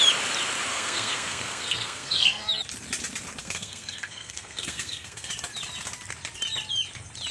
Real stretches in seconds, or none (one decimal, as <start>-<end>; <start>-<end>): 0.0-0.7; 2.5-3.4; 5.3-7.3